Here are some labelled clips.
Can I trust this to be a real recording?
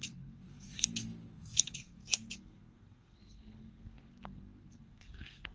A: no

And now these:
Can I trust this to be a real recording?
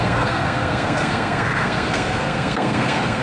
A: no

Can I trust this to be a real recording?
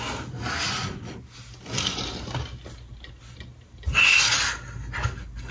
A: yes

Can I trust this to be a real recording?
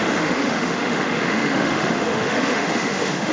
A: no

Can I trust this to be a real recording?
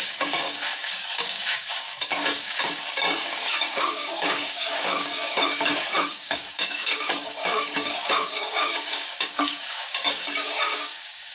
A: no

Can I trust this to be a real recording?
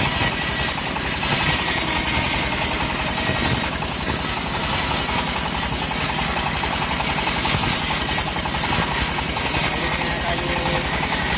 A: no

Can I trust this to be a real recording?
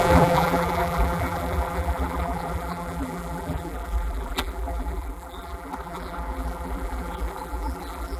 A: no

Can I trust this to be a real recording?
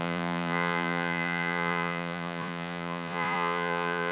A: no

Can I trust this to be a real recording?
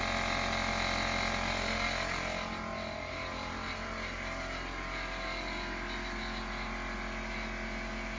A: yes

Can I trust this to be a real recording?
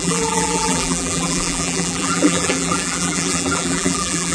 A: no